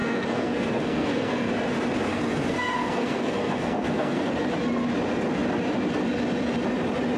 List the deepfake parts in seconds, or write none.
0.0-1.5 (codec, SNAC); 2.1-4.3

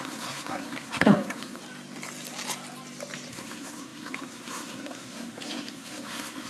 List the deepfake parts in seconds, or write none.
0.0-1.6 (codec, SNAC); 3.3-6.5

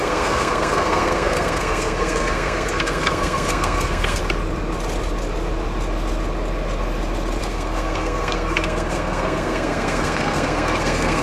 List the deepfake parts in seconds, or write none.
0.0-4.2 (codec, SNAC); 7.4-11.2

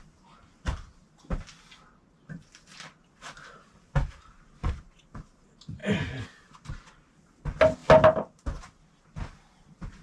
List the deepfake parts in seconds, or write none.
none

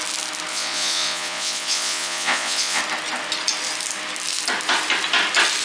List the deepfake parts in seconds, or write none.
0.5-2.8 (vocoder, Vocos)